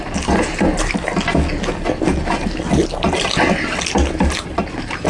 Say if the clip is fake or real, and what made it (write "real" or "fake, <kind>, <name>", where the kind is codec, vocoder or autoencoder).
real